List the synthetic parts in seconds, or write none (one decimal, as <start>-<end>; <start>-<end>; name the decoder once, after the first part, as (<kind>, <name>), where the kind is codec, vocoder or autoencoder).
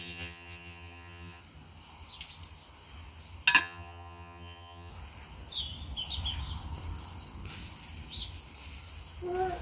0.0-1.4 (vocoder, HiFi-GAN); 3.6-4.9